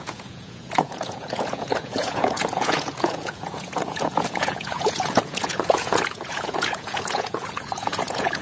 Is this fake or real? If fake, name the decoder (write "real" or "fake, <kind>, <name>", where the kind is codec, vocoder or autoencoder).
fake, vocoder, Vocos